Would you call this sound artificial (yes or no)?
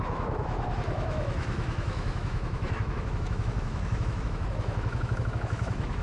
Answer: yes